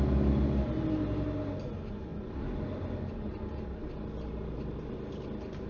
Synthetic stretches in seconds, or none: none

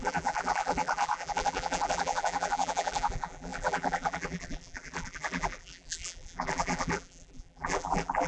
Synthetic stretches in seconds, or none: 0.0-8.3 (vocoder, BigVGAN v2)

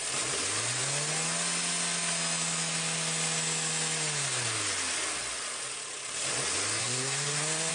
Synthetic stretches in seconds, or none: 6.8-7.7 (codec, SNAC)